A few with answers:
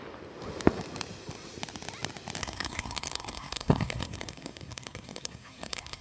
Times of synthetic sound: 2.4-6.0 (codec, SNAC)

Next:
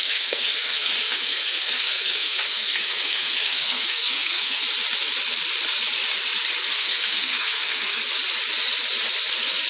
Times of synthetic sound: 0.0-4.6 (codec, SNAC); 6.7-8.0

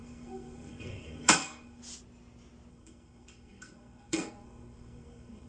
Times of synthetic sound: 0.0-1.8 (codec, SNAC); 2.7-5.5